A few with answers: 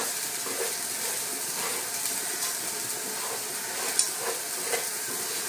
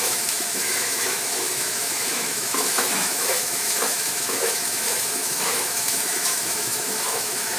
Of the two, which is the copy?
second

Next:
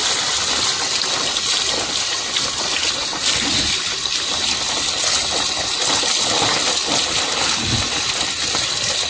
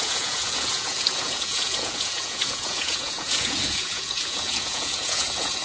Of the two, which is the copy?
second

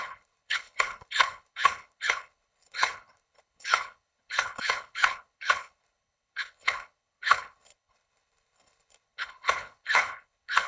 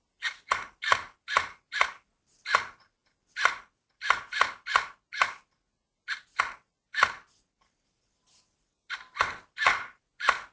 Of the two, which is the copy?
first